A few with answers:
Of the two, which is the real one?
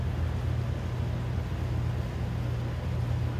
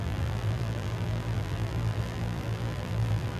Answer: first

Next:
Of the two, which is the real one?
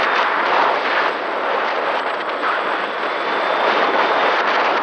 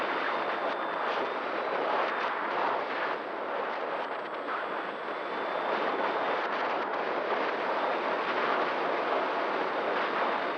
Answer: second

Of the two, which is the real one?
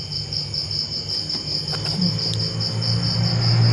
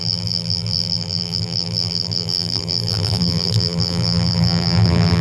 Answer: first